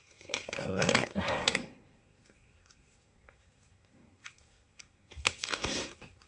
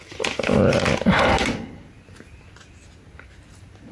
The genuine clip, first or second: second